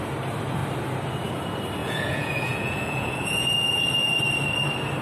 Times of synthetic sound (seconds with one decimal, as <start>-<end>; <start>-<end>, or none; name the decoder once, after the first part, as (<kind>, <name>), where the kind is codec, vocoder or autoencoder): 1.8-4.1 (vocoder, Vocos)